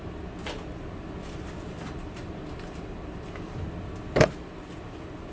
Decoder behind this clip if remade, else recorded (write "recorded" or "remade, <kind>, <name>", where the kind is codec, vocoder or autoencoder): recorded